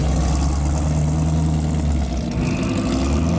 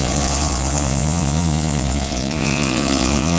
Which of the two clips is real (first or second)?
first